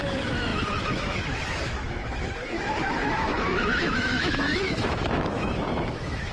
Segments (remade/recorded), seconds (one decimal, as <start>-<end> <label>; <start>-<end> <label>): 0.0-6.3 remade